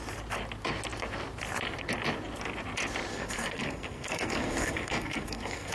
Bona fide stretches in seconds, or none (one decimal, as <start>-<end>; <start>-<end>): 0.0-3.1